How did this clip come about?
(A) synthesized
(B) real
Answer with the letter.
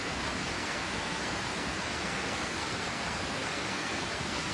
A